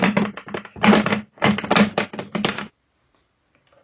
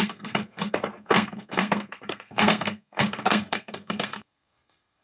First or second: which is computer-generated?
second